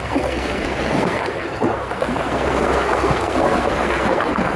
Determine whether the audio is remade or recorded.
remade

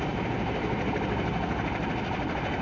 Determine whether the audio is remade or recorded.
recorded